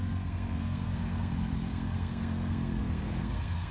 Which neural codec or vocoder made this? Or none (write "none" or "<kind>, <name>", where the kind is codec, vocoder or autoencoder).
codec, SNAC